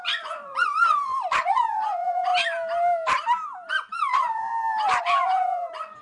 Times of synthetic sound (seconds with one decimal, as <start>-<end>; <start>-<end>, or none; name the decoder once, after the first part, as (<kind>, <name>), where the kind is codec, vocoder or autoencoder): 0.0-2.3 (vocoder, Vocos); 3.7-4.5; 5.0-6.0